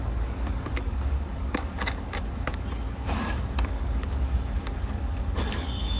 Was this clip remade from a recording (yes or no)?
yes